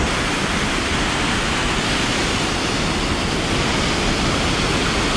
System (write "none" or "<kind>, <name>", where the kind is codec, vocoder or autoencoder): none